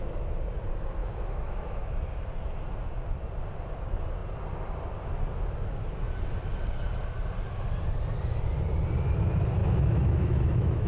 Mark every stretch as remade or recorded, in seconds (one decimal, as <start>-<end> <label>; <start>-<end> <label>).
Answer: 0.0-1.0 recorded; 1.0-1.9 remade; 1.9-9.6 recorded; 9.6-10.9 remade